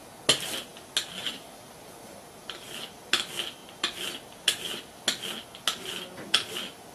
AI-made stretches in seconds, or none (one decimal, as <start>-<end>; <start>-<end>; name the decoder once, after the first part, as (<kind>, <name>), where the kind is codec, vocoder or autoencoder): 3.6-4.9 (vocoder, BigVGAN v2)